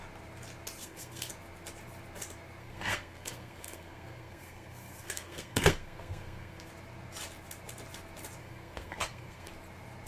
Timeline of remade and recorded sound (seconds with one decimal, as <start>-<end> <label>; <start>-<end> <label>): 0.0-0.8 recorded; 0.8-1.3 remade; 1.3-2.6 recorded; 2.6-6.7 remade; 6.7-8.4 recorded; 8.4-9.5 remade; 9.5-10.1 recorded